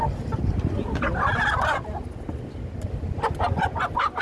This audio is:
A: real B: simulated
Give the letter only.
A